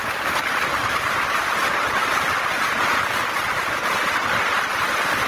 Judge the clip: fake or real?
real